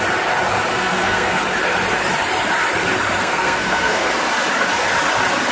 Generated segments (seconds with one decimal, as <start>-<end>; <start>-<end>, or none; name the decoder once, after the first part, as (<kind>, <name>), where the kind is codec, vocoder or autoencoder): 0.7-1.4 (codec, SNAC); 3.2-4.1